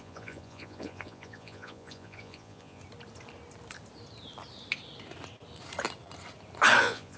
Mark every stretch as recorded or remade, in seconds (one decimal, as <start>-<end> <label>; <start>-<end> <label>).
0.0-2.8 remade; 2.8-6.8 recorded; 6.8-7.2 remade